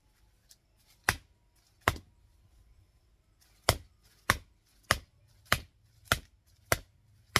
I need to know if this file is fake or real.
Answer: real